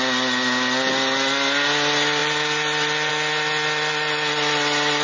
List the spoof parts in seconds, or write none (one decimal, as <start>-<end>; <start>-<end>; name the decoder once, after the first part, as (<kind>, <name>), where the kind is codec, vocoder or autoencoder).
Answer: none

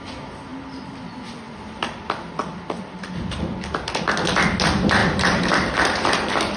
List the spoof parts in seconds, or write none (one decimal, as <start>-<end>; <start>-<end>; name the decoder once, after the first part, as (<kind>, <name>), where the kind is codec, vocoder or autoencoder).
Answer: 2.4-3.7 (vocoder, BigVGAN v2); 5.0-6.6

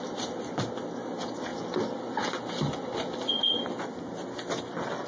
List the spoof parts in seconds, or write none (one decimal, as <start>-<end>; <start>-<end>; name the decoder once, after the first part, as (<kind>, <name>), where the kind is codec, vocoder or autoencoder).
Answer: none

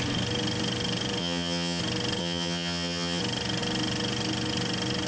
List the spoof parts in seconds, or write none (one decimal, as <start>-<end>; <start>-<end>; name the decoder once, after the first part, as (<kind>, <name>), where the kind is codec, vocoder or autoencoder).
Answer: 1.2-1.8 (vocoder, HiFi-GAN); 2.2-3.2

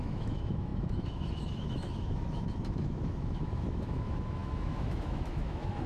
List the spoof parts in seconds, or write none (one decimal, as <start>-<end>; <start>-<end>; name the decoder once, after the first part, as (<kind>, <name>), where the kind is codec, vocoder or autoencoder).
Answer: 0.0-5.9 (autoencoder, DAC-VAE)

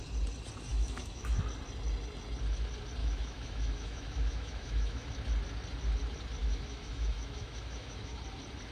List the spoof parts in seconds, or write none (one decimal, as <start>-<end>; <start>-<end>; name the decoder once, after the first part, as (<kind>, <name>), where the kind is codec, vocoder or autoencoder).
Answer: 0.7-1.4 (autoencoder, DAC-VAE); 3.0-5.1; 6.4-8.2

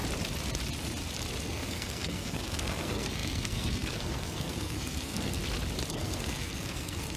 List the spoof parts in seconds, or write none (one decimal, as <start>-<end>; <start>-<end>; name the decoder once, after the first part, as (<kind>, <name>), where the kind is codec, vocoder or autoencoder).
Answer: 1.5-5.4 (codec, SNAC); 5.9-7.2